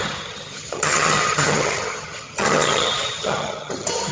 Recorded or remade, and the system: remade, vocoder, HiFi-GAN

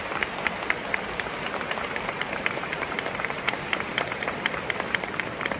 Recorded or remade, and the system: remade, vocoder, BigVGAN v2